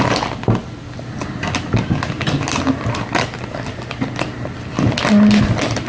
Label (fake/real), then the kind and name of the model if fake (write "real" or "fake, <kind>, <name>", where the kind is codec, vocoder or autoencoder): real